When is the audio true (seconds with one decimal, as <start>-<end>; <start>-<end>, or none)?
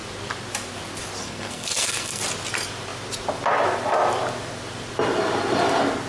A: 0.0-1.2; 2.2-6.1